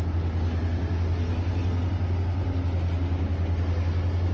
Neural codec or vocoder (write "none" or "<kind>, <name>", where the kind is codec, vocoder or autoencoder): none